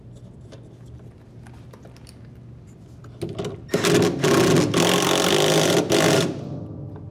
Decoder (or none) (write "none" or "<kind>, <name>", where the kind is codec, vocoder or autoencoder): none